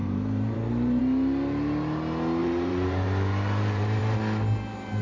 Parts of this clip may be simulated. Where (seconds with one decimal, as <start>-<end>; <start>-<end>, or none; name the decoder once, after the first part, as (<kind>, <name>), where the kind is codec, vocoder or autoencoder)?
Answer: 0.0-1.0 (vocoder, BigVGAN v2); 2.4-4.0